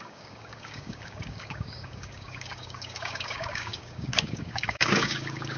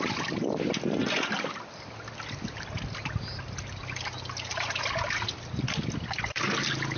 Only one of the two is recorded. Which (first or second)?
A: second